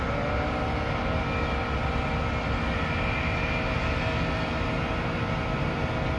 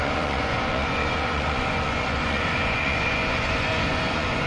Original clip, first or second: first